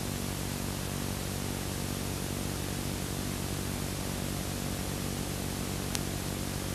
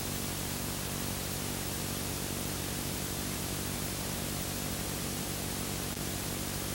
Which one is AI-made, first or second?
second